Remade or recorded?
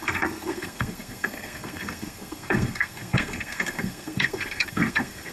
remade